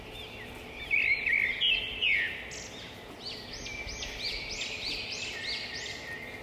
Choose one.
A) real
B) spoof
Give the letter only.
A